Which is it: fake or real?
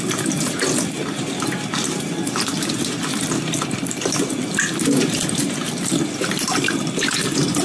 real